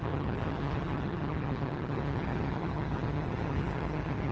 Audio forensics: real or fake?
fake